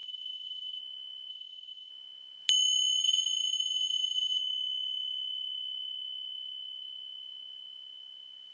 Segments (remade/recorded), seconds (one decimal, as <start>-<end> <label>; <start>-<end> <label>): 0.0-0.8 remade; 0.8-1.3 recorded; 1.3-1.9 remade; 1.9-3.0 recorded; 3.0-4.4 remade; 4.4-8.5 recorded